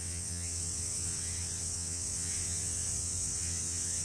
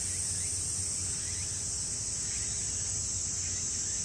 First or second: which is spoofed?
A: first